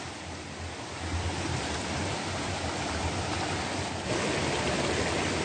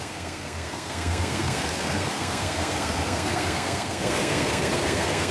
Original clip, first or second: first